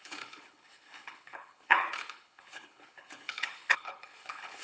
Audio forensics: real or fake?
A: fake